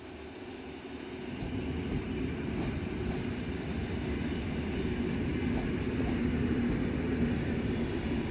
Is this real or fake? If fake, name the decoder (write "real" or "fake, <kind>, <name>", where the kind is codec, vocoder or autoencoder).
real